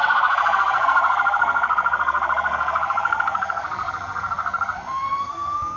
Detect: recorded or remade remade